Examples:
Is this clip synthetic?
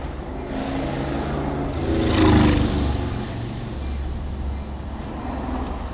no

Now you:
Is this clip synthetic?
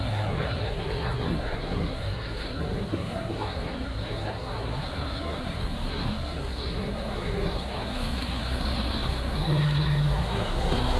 yes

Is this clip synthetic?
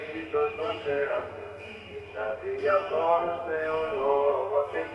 yes